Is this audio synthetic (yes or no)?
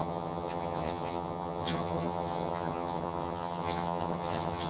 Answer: yes